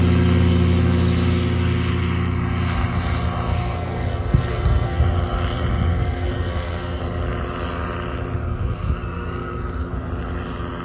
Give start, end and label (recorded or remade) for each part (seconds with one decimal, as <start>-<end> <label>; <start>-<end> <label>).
0.0-3.5 recorded; 3.5-5.0 remade; 5.0-5.9 recorded; 5.9-7.0 remade; 7.0-8.4 recorded; 8.4-10.1 remade; 10.1-10.8 recorded